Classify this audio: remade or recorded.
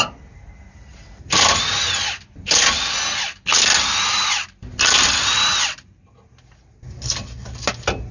recorded